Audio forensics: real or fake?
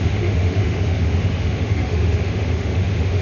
fake